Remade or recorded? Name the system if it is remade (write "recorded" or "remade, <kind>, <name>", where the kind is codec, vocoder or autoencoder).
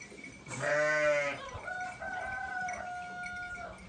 recorded